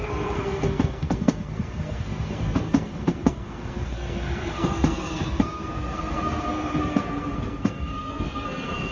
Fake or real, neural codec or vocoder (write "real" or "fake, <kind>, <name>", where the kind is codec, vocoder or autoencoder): fake, codec, SNAC